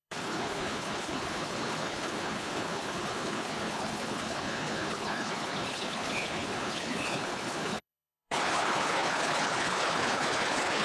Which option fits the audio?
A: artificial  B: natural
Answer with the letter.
A